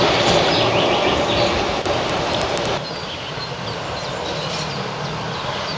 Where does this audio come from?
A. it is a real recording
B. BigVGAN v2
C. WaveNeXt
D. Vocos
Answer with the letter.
A